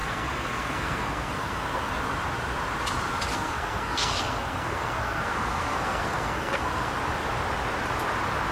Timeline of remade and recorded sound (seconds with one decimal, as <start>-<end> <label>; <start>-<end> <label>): 0.0-1.9 remade; 1.9-3.3 recorded; 3.3-6.9 remade; 6.9-8.5 recorded